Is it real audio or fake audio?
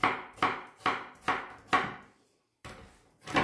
real